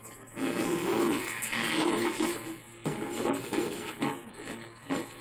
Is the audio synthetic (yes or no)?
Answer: yes